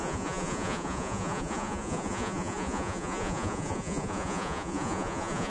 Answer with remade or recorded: remade